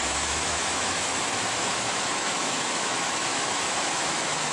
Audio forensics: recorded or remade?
remade